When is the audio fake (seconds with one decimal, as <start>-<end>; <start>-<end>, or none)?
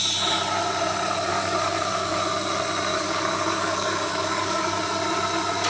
1.3-2.2; 2.9-4.8